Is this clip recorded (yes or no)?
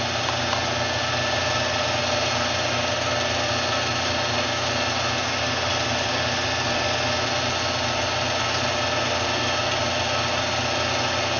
yes